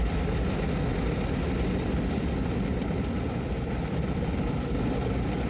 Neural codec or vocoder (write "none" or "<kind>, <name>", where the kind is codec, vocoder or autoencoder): none